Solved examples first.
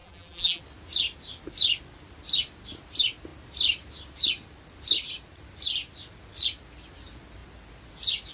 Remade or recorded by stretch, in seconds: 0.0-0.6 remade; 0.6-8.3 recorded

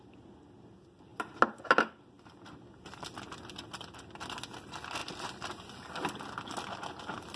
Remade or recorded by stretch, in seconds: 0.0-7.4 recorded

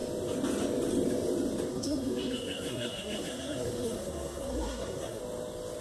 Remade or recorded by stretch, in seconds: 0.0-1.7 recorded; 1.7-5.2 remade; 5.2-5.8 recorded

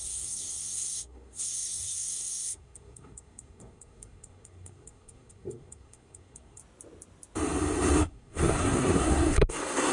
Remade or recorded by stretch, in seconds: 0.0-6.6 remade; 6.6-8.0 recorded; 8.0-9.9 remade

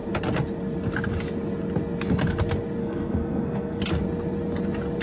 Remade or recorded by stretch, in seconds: 0.0-2.8 recorded; 2.8-3.8 remade; 3.8-5.0 recorded